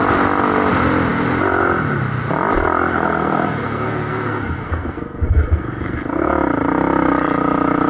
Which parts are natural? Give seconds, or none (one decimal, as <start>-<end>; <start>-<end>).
0.0-2.9; 6.3-7.9